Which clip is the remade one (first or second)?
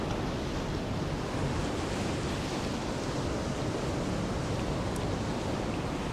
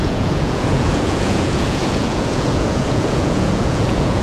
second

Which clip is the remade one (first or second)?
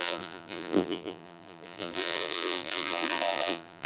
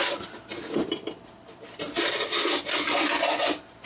first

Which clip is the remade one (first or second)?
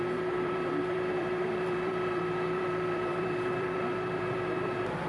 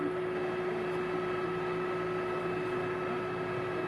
first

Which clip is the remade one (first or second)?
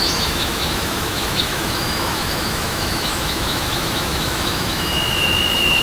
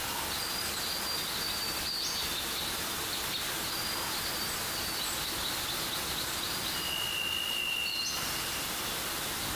first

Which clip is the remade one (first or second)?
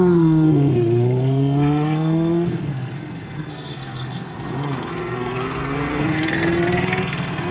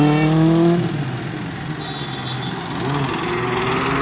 first